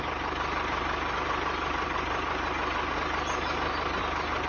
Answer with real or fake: real